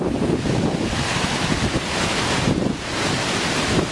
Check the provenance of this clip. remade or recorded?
recorded